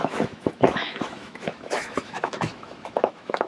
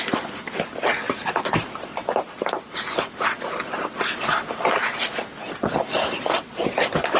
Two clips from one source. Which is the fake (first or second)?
first